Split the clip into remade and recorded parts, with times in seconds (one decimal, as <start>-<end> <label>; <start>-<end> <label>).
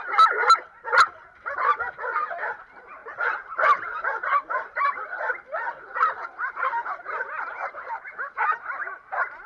0.0-9.5 recorded